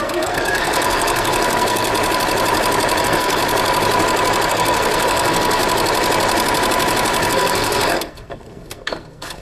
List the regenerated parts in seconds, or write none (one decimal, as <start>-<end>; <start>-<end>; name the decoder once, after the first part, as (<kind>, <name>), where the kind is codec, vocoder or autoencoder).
0.0-1.9 (codec, SNAC); 3.0-3.4; 4.5-5.6; 7.3-9.4